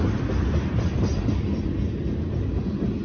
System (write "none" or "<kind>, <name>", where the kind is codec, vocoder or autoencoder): none